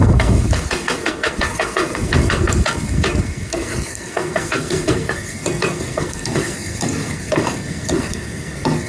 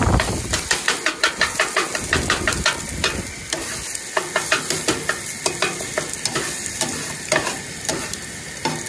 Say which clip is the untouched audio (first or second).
second